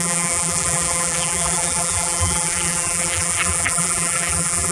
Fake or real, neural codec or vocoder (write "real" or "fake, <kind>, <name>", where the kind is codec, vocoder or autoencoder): fake, vocoder, BigVGAN v2